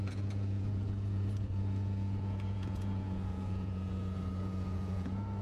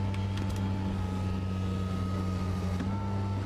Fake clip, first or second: first